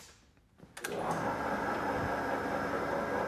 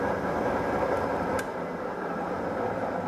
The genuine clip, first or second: first